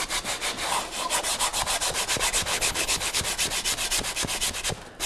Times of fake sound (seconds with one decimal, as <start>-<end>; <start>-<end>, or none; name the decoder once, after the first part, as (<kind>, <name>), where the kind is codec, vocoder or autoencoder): 2.5-3.2 (codec, HILCodec)